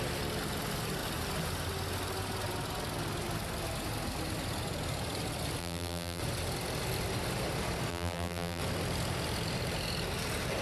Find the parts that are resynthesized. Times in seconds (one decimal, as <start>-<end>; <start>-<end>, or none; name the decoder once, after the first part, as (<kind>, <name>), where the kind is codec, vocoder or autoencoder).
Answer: 5.6-6.2 (vocoder, BigVGAN v2); 7.9-8.6